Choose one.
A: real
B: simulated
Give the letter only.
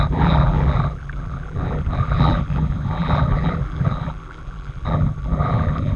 B